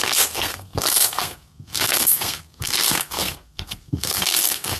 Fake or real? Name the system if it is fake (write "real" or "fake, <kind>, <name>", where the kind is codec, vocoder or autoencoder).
fake, codec, SNAC